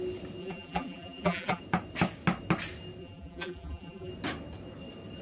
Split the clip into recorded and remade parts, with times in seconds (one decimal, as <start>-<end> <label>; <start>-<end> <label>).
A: 0.0-0.4 recorded; 0.4-1.6 remade; 1.6-3.0 recorded; 3.0-4.1 remade; 4.1-5.2 recorded